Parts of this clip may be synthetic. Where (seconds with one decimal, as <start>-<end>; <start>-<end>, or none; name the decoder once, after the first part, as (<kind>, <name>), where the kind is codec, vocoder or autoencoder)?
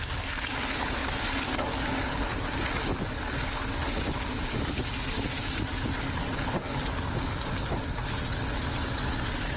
none